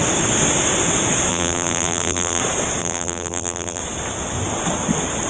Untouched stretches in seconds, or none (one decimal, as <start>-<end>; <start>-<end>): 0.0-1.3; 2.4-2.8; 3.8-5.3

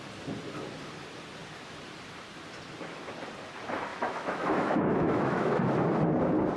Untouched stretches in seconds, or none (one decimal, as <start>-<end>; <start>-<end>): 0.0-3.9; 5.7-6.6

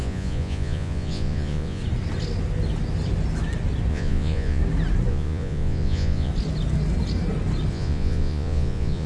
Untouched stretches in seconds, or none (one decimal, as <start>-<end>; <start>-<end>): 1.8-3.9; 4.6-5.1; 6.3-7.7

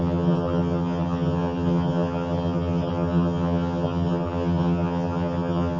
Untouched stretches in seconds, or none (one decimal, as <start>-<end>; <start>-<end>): none

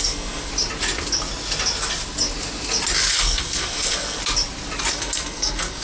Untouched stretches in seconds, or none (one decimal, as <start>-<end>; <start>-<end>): 0.5-3.1; 4.2-4.9

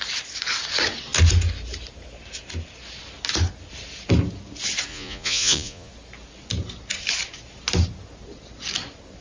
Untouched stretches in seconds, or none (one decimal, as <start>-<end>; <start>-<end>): 0.0-4.9; 5.9-9.2